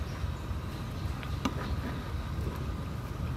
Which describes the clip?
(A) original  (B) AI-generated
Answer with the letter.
A